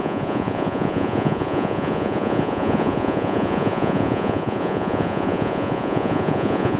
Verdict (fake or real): fake